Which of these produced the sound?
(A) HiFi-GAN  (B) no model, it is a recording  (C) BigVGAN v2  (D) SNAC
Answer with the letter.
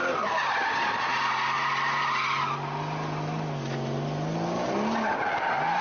B